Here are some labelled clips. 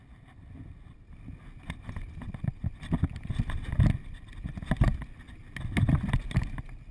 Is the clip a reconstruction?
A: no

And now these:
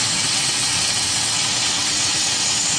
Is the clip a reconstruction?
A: yes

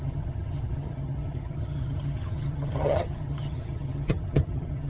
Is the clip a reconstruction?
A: yes